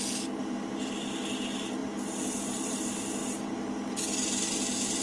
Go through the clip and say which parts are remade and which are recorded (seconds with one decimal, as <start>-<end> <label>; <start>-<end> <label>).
0.0-5.0 recorded